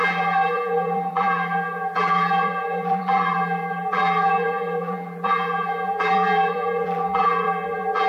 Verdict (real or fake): fake